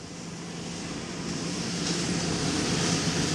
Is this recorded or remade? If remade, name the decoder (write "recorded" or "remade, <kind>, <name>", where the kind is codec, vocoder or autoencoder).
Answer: remade, vocoder, BigVGAN v2